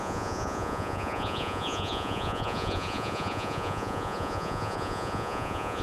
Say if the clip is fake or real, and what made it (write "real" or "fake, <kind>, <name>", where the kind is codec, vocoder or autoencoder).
fake, vocoder, Vocos